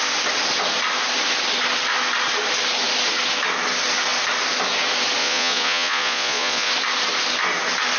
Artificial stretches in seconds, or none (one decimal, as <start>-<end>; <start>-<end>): 5.2-6.7